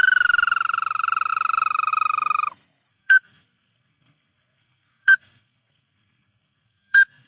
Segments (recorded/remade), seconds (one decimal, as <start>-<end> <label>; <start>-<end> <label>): 0.0-2.9 recorded; 2.9-7.3 remade